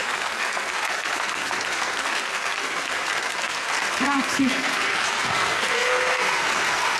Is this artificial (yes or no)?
yes